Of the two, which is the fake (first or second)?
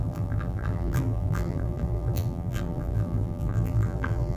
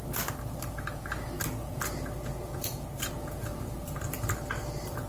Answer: first